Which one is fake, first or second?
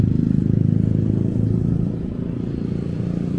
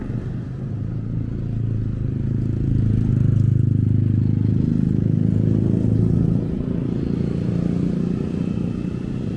first